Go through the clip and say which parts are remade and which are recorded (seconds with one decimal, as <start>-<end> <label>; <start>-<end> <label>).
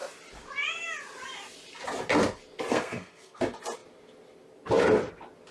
0.0-2.7 recorded; 2.7-3.4 remade; 3.4-5.5 recorded